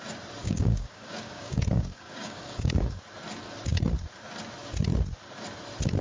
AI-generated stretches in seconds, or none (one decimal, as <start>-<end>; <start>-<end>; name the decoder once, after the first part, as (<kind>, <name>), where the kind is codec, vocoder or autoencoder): 0.4-3.0 (codec, DAC)